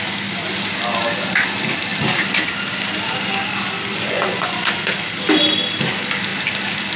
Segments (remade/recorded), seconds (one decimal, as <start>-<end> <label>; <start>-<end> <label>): 0.0-3.9 recorded; 3.9-4.7 remade; 4.7-7.0 recorded